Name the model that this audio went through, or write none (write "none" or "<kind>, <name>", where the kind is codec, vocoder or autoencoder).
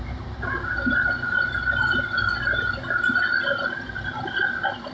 none